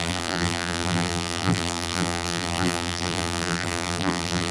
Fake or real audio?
fake